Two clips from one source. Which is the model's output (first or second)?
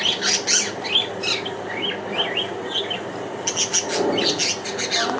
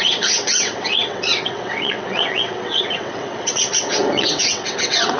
second